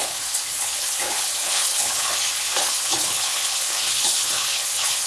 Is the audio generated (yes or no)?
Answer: yes